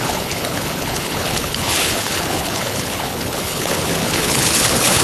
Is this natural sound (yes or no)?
no